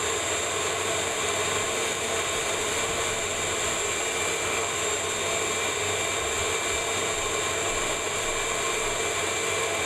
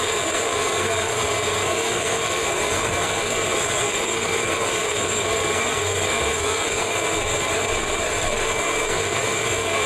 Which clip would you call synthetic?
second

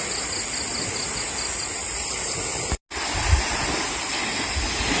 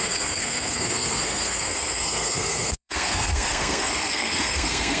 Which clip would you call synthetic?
second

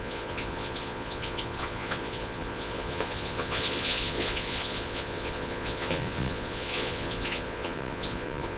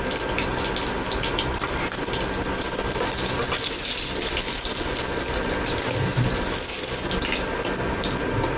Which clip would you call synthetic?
first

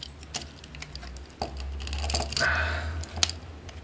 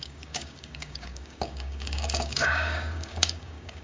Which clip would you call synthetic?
second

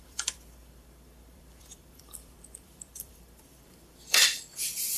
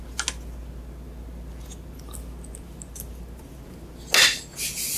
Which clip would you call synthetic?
first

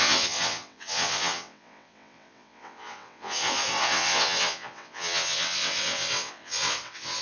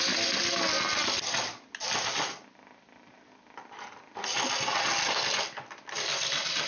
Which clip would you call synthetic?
first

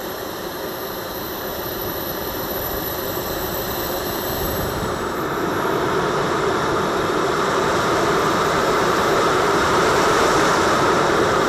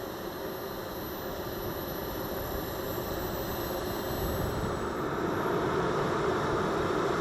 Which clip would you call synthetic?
first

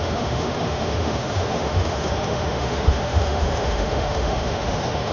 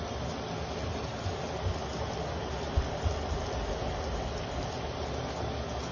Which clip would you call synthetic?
first